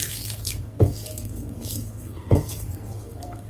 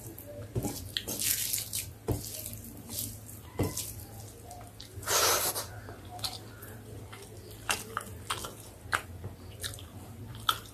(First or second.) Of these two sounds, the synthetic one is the first